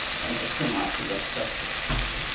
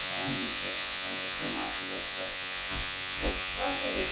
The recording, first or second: first